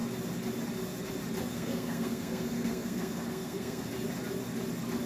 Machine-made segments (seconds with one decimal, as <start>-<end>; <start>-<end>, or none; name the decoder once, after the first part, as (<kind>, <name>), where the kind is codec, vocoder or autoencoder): 1.5-3.9 (codec, SNAC)